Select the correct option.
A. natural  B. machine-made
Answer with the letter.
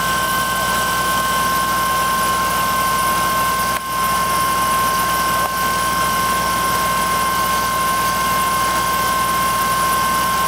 B